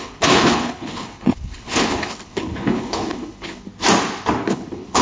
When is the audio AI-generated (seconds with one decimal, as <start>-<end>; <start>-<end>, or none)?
0.0-3.7; 4.5-5.0